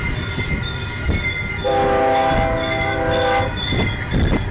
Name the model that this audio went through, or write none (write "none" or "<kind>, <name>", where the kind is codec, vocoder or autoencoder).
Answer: none